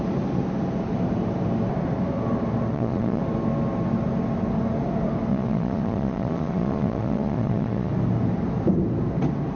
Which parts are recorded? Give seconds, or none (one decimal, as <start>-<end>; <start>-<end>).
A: 0.0-2.7; 3.2-5.3; 7.9-9.6